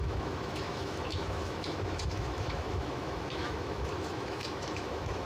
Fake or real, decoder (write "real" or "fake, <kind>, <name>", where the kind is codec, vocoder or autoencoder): fake, autoencoder, DAC-VAE